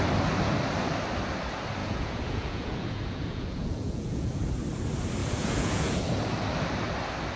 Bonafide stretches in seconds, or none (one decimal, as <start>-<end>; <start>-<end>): 0.0-1.8; 4.4-5.2; 6.0-7.4